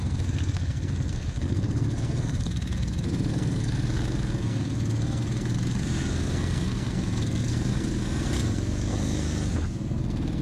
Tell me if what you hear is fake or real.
fake